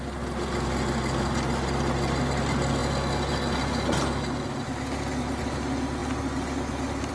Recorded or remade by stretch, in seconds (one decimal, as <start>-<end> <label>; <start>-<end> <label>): 0.0-7.1 recorded